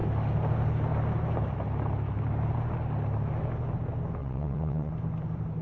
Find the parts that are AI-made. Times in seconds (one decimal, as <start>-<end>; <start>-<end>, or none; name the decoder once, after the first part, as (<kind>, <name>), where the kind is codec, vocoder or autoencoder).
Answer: 4.2-4.9 (vocoder, WaveNeXt)

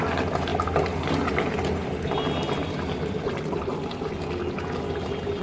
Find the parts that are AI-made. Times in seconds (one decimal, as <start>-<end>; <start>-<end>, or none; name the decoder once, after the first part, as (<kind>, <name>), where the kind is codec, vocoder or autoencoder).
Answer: none

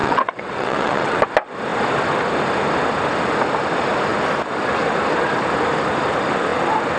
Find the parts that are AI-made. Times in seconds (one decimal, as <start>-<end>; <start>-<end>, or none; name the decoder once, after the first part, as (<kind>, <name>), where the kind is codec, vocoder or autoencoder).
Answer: 0.0-1.2 (vocoder, WaveNeXt)

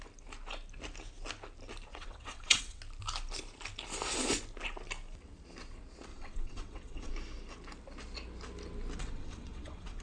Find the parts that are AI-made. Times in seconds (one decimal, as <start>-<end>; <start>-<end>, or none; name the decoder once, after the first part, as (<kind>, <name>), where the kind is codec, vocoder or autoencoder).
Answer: 1.9-2.8 (vocoder, WaveNeXt); 6.1-7.1; 9.0-10.0

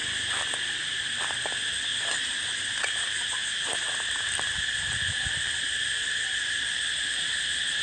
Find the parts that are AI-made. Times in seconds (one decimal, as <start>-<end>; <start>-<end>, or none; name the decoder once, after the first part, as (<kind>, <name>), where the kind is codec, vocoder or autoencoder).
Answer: none